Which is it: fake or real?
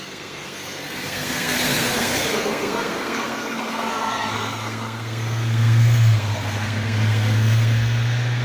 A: fake